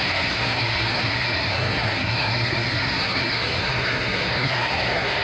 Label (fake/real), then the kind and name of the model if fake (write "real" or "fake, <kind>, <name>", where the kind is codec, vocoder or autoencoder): fake, codec, SNAC